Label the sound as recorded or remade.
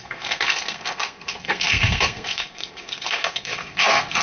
remade